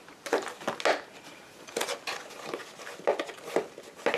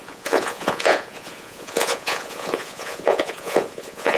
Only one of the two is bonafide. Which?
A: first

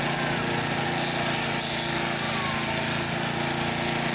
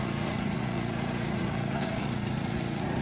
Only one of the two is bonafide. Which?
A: first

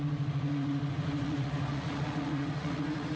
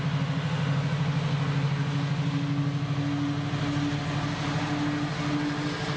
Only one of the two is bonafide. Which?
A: second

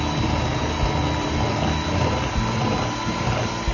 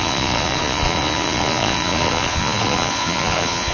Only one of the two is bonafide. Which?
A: first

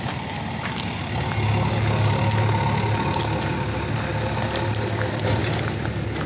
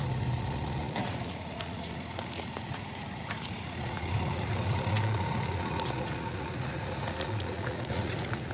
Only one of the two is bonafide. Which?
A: first